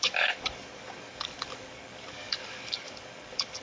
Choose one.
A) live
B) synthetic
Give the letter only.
B